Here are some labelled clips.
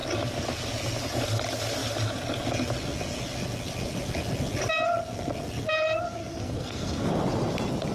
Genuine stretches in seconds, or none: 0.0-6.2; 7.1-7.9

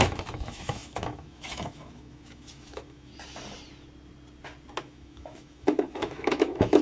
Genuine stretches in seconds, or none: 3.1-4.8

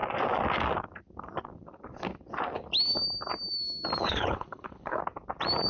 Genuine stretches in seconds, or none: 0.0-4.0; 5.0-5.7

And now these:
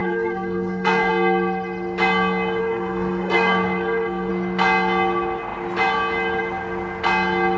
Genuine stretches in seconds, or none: 1.1-2.6; 4.3-7.6

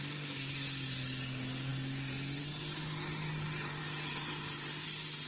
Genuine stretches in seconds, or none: 0.0-5.3

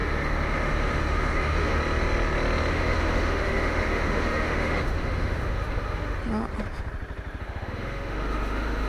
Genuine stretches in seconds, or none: 1.8-2.7; 6.2-7.4